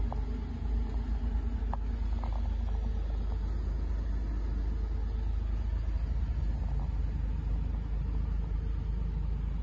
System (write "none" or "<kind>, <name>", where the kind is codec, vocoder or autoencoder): none